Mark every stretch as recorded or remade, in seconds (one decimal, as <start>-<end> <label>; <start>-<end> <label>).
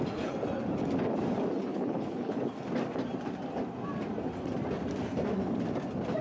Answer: 0.0-1.7 recorded; 1.7-2.5 remade; 2.5-6.2 recorded